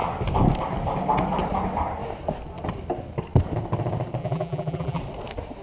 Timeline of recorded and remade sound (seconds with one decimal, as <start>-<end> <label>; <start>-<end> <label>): 0.0-4.2 recorded; 4.2-5.0 remade; 5.0-5.6 recorded